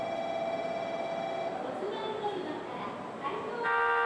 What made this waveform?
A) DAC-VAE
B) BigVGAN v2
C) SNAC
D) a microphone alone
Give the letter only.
D